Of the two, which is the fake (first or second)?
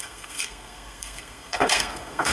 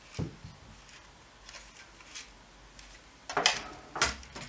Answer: first